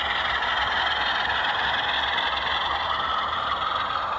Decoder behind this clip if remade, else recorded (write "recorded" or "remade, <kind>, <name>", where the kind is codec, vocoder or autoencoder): recorded